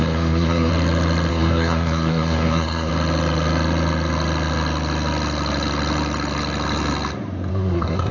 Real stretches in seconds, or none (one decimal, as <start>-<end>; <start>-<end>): 0.7-1.3; 2.9-7.5